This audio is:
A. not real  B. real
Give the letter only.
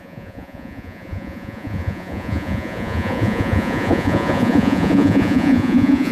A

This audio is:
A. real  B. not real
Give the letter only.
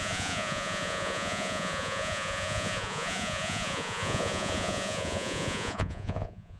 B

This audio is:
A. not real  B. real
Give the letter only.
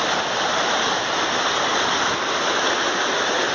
B